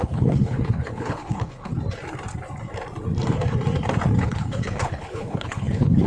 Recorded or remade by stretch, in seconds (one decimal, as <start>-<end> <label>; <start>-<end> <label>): 0.0-1.7 remade; 1.7-4.2 recorded; 4.2-6.1 remade